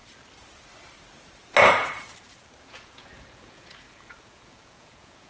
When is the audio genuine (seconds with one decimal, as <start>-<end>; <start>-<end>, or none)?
0.0-2.6